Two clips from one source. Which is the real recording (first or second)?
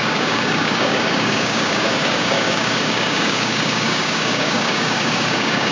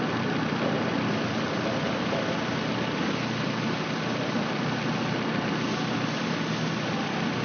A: second